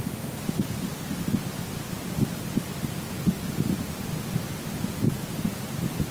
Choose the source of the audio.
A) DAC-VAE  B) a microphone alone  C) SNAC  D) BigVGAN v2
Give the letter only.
B